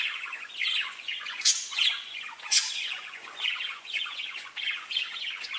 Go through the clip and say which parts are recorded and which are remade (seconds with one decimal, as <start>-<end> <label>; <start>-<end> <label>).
0.0-5.6 remade